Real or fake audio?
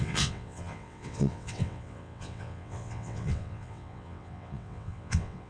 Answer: fake